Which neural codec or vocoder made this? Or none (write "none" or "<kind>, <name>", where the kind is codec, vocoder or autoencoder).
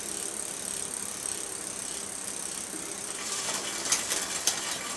vocoder, BigVGAN v2